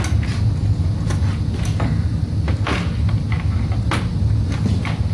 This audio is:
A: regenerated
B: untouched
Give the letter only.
B